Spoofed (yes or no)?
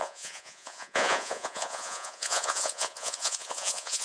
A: yes